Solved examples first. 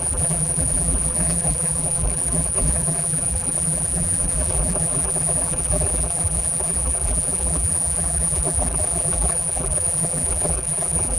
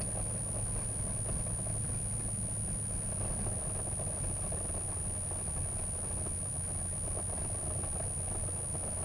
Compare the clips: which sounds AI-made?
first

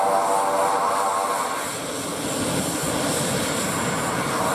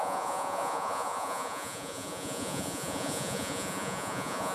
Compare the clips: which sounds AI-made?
second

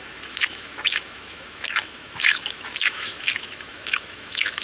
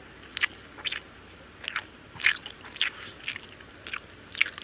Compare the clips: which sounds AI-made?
first